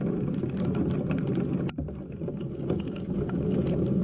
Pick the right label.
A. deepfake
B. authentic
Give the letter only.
B